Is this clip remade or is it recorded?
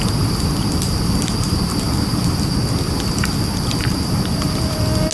recorded